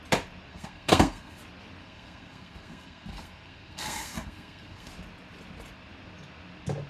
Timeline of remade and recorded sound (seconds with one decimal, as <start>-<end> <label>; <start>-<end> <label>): 0.0-0.5 recorded; 0.5-1.4 remade; 1.4-1.8 recorded; 1.8-4.9 remade; 4.9-6.9 recorded